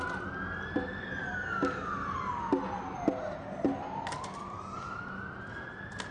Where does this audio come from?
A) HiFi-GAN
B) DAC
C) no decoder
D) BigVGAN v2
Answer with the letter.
C